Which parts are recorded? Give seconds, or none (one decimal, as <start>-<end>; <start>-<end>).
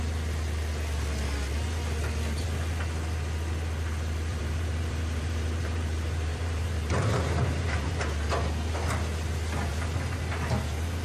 0.0-4.3; 7.9-9.7; 10.2-11.0